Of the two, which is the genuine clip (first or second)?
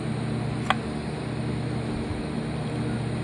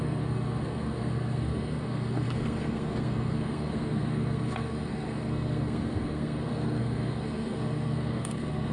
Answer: first